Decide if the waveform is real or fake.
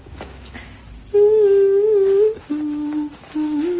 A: real